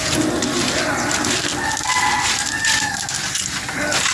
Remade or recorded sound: recorded